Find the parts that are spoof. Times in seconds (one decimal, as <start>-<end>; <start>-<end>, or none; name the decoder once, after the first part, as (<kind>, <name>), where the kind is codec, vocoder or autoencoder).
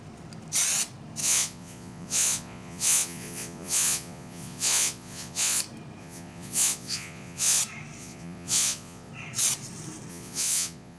1.2-5.6 (vocoder, Vocos); 6.0-7.6; 8.0-9.1; 10.1-11.0